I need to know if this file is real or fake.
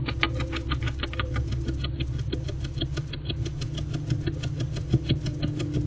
real